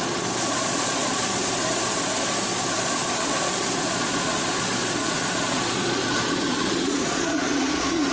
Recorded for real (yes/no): no